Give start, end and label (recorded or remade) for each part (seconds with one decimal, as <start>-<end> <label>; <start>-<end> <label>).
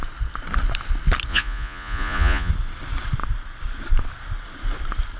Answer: 0.0-1.3 recorded; 1.3-2.5 remade; 2.5-5.2 recorded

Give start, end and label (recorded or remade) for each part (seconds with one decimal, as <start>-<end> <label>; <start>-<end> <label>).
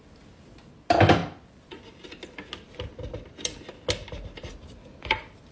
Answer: 0.0-5.5 recorded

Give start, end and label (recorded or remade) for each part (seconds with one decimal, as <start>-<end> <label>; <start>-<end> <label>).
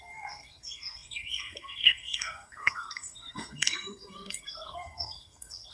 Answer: 0.0-5.7 remade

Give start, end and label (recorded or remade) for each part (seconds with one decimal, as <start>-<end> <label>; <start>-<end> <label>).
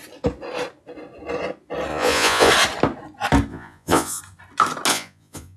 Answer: 0.0-1.9 recorded; 1.9-2.5 remade; 2.5-3.5 recorded; 3.5-4.2 remade; 4.2-4.9 recorded; 4.9-5.6 remade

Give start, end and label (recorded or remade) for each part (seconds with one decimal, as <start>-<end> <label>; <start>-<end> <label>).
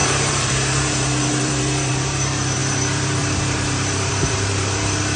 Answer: 0.0-5.2 remade